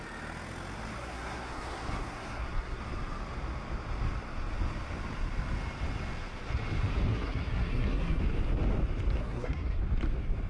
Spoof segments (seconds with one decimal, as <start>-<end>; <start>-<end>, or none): 1.0-2.8; 7.1-8.2; 9.2-9.8